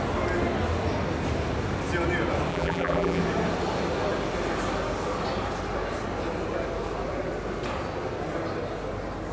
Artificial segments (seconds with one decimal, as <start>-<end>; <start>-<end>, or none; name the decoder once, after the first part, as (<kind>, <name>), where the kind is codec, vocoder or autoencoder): 2.5-3.2 (vocoder, BigVGAN v2)